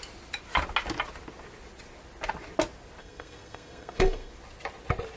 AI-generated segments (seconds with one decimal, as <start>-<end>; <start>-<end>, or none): 3.0-4.3